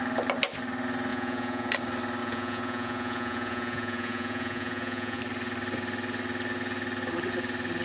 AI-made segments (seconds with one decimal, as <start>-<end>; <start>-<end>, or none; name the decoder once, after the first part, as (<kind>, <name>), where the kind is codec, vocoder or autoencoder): 1.1-1.7 (vocoder, Vocos); 2.2-5.2